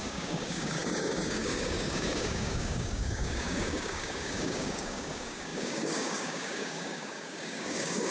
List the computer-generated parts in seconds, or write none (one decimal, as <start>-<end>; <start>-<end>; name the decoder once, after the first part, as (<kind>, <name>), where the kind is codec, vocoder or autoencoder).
0.0-8.1 (codec, DAC)